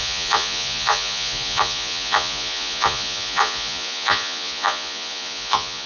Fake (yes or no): yes